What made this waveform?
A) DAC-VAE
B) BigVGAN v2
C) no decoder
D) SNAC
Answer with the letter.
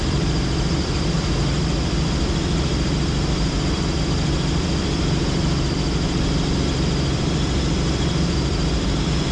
B